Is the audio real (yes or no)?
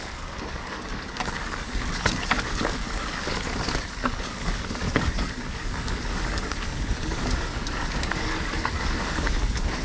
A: no